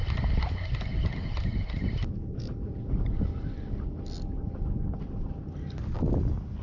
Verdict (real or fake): real